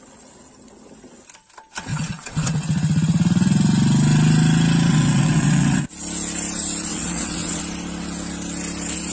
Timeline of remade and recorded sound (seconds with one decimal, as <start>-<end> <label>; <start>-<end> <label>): 0.0-1.9 recorded; 1.9-2.5 remade; 2.5-4.9 recorded; 4.9-5.9 remade; 5.9-6.9 recorded; 6.9-7.6 remade; 7.6-9.1 recorded